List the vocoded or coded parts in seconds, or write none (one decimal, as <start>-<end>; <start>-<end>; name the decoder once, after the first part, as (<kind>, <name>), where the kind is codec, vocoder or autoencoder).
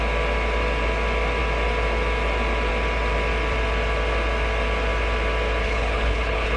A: 5.6-6.6 (codec, HILCodec)